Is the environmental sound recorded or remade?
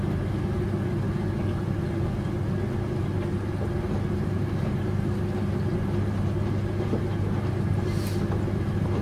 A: recorded